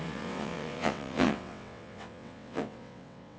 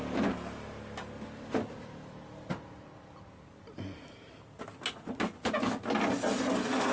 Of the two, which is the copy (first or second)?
first